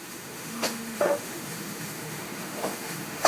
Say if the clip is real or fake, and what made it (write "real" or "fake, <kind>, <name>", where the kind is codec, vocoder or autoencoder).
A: fake, autoencoder, DAC-VAE